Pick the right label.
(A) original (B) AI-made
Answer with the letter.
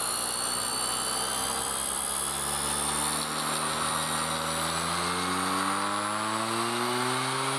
A